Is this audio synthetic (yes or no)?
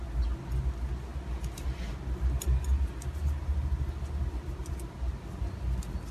no